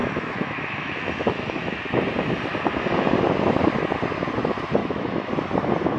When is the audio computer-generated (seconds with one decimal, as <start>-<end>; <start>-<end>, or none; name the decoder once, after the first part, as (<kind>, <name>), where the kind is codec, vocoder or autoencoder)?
0.0-1.9 (autoencoder, DAC-VAE); 4.8-5.3